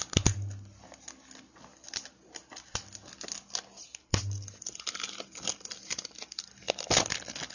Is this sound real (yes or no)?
yes